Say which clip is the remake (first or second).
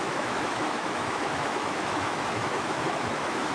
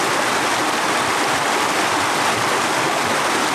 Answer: first